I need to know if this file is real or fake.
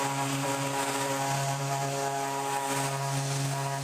real